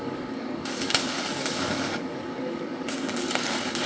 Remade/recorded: remade